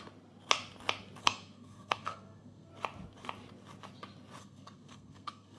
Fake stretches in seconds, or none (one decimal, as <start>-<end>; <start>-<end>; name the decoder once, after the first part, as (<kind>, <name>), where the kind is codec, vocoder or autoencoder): 1.2-2.7 (codec, SNAC); 4.4-5.6